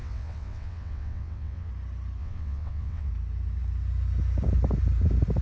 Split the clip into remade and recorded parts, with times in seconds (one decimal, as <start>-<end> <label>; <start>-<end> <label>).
0.0-1.7 remade; 1.7-2.2 recorded; 2.2-3.1 remade; 3.1-5.4 recorded